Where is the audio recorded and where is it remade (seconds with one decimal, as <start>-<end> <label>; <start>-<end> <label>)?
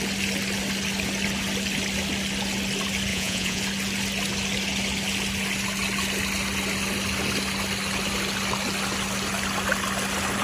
0.0-3.1 recorded; 3.1-3.6 remade; 3.6-10.4 recorded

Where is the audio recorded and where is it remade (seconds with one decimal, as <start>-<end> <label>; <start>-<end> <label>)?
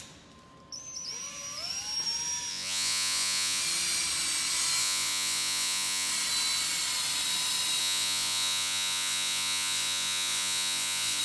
0.0-2.5 recorded; 2.5-3.6 remade; 3.6-4.8 recorded; 4.8-6.1 remade; 6.1-7.8 recorded; 7.8-11.2 remade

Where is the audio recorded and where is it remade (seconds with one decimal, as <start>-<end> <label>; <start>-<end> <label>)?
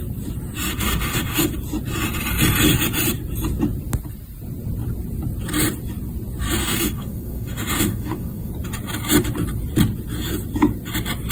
0.0-0.7 recorded; 0.7-1.5 remade; 1.5-6.6 recorded; 6.6-8.5 remade; 8.5-11.3 recorded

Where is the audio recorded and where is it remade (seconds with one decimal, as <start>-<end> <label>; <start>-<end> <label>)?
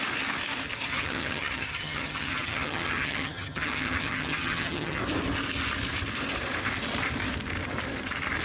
0.0-0.9 recorded; 0.9-5.0 remade; 5.0-8.4 recorded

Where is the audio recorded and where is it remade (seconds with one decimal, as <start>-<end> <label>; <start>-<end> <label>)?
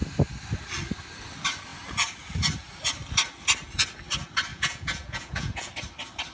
0.0-4.5 recorded; 4.5-5.7 remade; 5.7-6.3 recorded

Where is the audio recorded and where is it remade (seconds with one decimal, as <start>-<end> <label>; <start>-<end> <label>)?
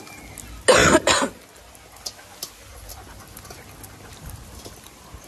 0.0-5.3 recorded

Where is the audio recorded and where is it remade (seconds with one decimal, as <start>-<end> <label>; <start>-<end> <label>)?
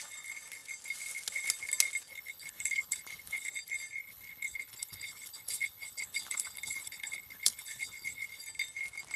0.0-2.1 recorded; 2.1-3.5 remade; 3.5-4.0 recorded; 4.0-8.4 remade; 8.4-9.2 recorded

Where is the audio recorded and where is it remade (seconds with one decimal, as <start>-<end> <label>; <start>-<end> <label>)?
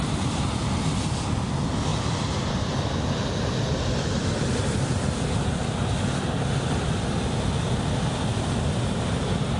0.0-9.6 recorded